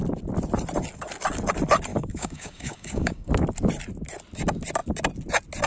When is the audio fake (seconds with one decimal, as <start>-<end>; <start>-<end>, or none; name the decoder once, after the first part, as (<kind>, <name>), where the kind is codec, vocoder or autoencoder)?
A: 1.9-3.3 (codec, DAC)